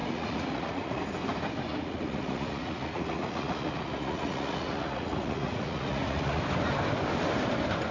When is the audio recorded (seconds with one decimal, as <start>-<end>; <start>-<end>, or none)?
1.0-1.7; 6.4-7.9